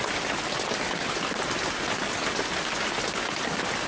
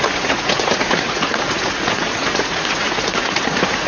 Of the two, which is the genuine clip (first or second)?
first